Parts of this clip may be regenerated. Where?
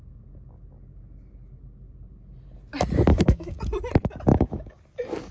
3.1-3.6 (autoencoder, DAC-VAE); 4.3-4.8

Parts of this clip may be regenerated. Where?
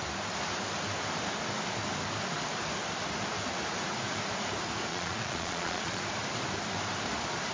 4.9-6.0 (vocoder, Vocos)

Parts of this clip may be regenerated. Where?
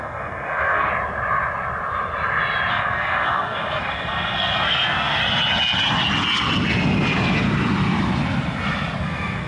0.0-0.9 (codec, SNAC); 2.7-5.2; 9.0-9.5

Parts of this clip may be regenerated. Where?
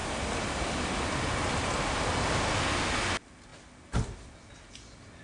none